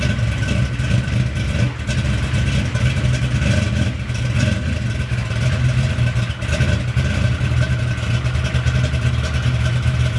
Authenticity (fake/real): real